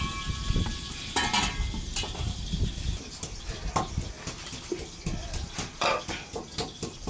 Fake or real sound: real